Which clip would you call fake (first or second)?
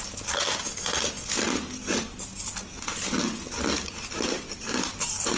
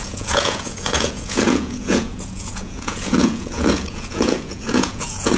second